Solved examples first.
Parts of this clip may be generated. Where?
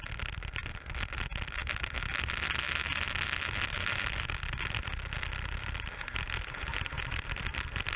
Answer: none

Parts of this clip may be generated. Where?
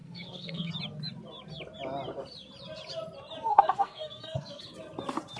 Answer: 0.0-0.7 (codec, SNAC); 3.5-4.6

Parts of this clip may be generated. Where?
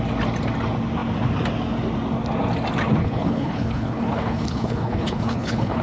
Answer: 3.0-5.8 (codec, HILCodec)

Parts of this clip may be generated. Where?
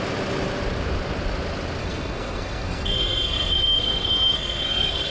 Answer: 1.8-5.1 (codec, SNAC)